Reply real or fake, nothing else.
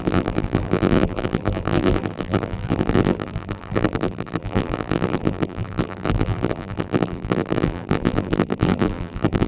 fake